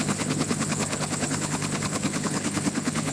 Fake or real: fake